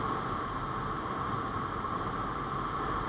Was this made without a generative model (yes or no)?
yes